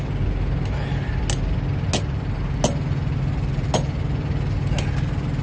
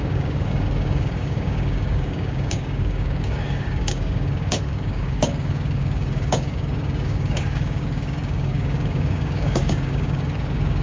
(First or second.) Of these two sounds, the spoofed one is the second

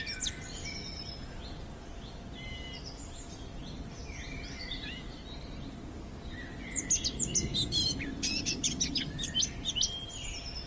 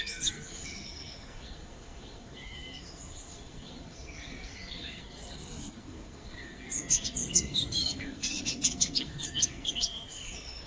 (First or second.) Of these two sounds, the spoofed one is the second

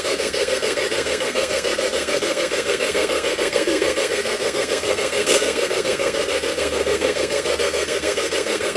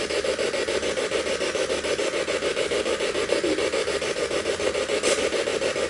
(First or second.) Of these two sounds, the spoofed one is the first